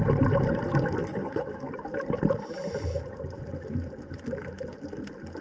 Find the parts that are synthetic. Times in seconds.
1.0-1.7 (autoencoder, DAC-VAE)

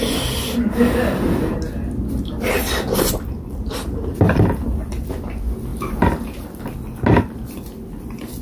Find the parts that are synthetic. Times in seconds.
none